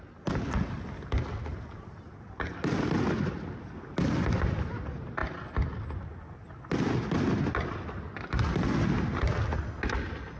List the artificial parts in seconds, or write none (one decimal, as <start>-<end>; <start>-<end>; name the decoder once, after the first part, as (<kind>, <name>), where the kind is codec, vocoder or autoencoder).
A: 1.5-4.1 (vocoder, BigVGAN v2)